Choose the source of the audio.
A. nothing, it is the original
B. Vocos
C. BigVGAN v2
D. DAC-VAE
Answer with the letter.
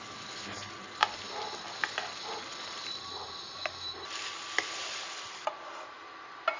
C